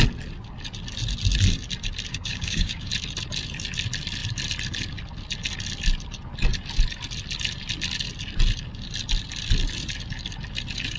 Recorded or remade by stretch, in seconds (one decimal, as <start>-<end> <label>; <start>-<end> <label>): 0.0-2.1 recorded; 2.1-2.9 remade; 2.9-11.0 recorded